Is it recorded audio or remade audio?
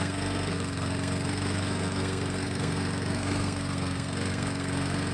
remade